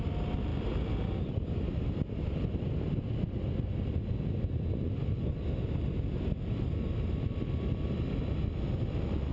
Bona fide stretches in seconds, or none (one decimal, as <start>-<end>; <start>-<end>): 0.0-9.3